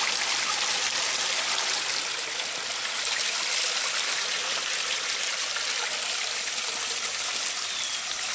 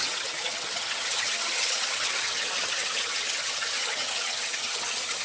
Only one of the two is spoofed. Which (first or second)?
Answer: second